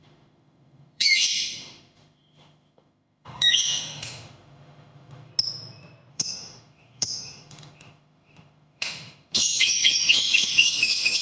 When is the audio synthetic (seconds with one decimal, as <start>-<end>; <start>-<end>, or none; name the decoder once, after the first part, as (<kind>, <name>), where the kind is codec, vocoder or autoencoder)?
0.0-5.3 (autoencoder, DAC-VAE); 6.1-11.2